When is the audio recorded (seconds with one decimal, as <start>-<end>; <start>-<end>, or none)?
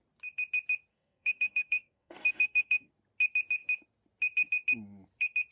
0.0-0.9; 2.9-5.5